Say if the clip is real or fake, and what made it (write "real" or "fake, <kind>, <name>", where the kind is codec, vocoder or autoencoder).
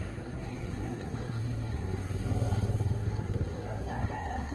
fake, codec, SNAC